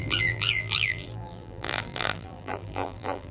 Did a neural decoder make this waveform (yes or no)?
yes